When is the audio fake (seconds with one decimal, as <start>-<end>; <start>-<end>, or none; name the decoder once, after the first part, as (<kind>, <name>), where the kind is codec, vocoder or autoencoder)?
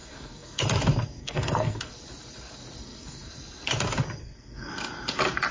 0.0-0.6 (codec, SNAC); 1.2-1.9; 2.8-3.3; 4.2-4.7